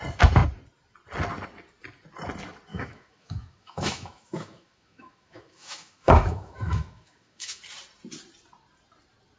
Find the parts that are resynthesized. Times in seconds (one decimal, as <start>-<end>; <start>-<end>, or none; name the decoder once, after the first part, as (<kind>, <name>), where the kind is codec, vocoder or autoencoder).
2.7-7.6 (autoencoder, DAC-VAE)